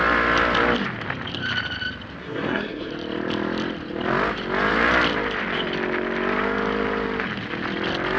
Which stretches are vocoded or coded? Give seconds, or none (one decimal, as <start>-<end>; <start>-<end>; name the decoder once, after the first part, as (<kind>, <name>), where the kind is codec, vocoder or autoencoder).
2.2-2.9 (codec, SNAC)